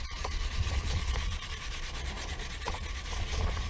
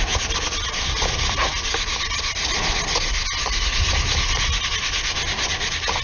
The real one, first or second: second